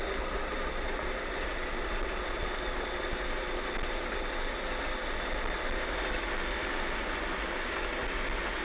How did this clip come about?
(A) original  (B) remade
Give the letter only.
A